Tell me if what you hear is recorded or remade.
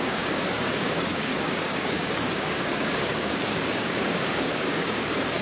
remade